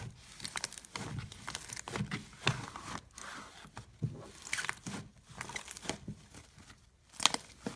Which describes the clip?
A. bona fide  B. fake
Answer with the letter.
A